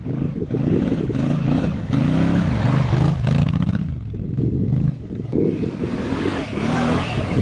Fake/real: fake